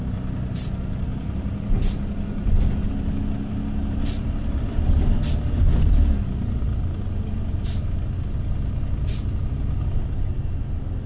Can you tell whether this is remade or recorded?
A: recorded